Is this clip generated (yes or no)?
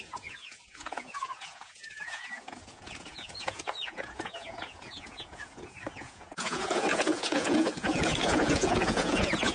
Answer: yes